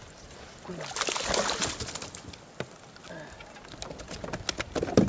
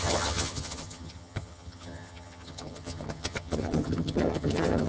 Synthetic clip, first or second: second